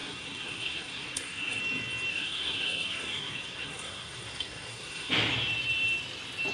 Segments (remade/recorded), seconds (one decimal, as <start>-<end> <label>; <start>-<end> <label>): 0.0-1.6 remade; 1.6-2.1 recorded; 2.1-5.1 remade; 5.1-6.5 recorded